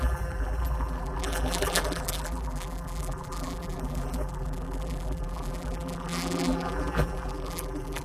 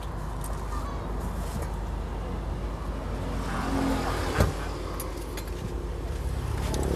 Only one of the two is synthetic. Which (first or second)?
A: first